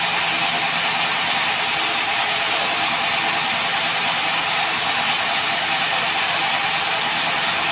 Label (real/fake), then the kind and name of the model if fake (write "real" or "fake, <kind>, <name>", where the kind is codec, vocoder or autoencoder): real